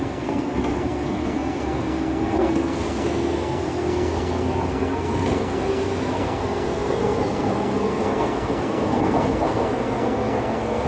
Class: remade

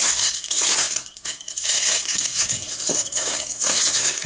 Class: remade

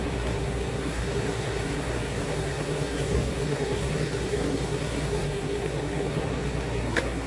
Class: remade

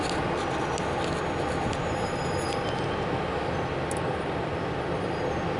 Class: recorded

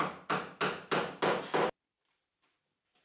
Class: recorded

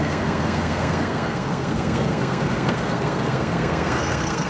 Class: remade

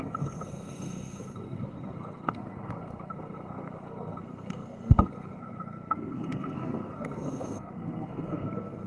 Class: remade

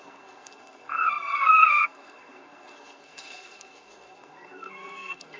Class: remade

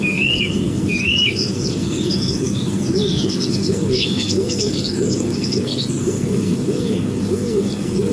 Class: remade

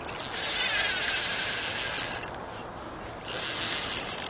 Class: recorded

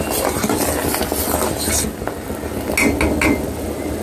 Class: recorded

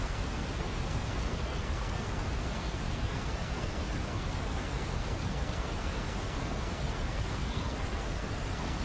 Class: remade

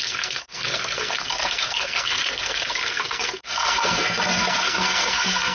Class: remade